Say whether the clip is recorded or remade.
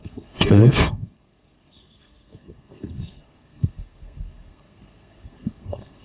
remade